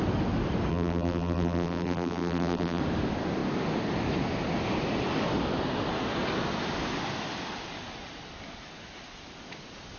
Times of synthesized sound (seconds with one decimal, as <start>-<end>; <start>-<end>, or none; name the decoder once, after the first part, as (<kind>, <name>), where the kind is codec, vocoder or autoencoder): 0.7-2.8 (vocoder, BigVGAN v2)